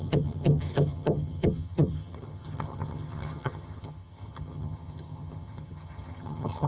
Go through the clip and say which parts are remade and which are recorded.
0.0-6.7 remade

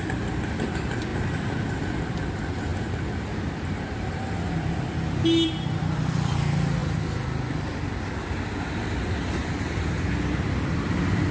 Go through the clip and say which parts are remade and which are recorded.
0.0-11.3 recorded

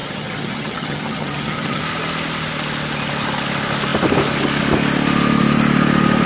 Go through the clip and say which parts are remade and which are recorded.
0.0-1.8 remade; 1.8-6.3 recorded

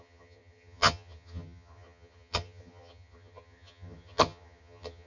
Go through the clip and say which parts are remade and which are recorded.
0.0-5.1 remade

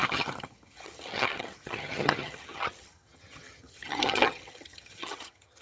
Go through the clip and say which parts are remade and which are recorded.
0.0-5.6 remade

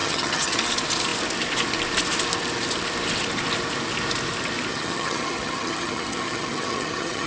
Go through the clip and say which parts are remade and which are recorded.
0.0-0.6 remade; 0.6-4.7 recorded; 4.7-7.3 remade